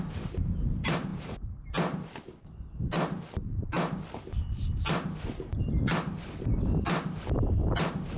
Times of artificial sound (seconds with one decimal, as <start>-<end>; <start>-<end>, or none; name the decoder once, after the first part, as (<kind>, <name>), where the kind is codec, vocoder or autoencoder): 0.0-8.2 (vocoder, BigVGAN v2)

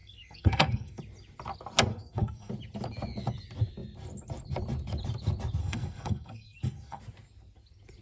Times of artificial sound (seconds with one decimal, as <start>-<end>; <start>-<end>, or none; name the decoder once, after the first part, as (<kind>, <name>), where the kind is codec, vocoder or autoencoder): 0.0-1.0 (codec, SNAC); 1.9-2.5; 5.6-7.0

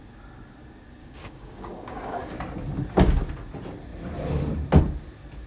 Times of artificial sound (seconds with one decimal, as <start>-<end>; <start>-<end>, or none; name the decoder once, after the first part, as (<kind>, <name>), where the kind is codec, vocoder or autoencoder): 1.0-2.4 (codec, DAC)

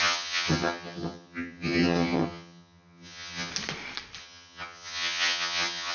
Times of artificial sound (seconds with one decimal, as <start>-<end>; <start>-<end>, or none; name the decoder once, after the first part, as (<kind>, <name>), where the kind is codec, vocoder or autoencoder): 0.0-3.5 (vocoder, HiFi-GAN); 4.2-5.9

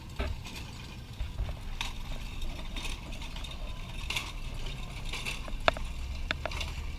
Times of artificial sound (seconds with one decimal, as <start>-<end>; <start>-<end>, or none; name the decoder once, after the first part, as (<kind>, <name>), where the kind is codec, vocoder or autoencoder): none

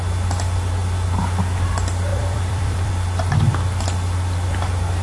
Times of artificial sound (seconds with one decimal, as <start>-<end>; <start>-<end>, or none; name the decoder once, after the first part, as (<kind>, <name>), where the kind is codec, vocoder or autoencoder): 2.1-2.9 (vocoder, BigVGAN v2)